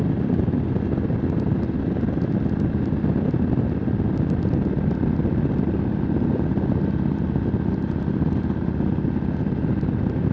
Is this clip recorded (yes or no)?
yes